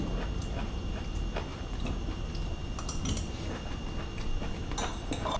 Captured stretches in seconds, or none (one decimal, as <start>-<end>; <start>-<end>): 0.0-0.4; 1.0-1.5; 4.0-5.4